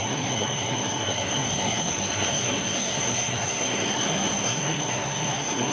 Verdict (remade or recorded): remade